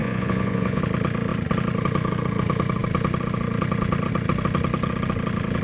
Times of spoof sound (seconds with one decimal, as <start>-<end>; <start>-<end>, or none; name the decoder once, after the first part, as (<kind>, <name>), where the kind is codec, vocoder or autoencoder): 0.0-0.8 (vocoder, Vocos)